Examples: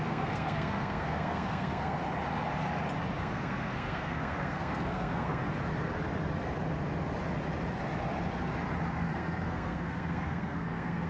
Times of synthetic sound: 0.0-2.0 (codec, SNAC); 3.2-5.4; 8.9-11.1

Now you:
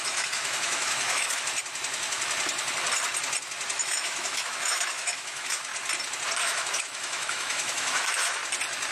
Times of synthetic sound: 0.0-1.4 (autoencoder, DAC-VAE); 3.7-5.7; 6.4-8.4

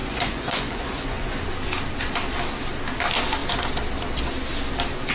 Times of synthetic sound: 0.0-1.4 (vocoder, Vocos)

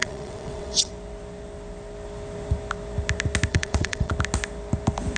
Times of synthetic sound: 0.0-0.9 (vocoder, WaveNeXt); 3.5-4.1